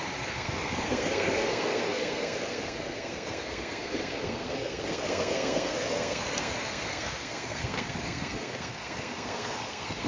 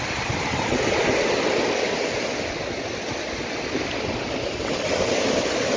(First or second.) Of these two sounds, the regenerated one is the first